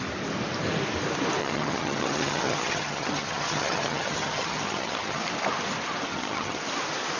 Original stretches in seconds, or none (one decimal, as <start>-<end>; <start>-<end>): 0.0-1.4; 5.2-6.1; 6.6-7.2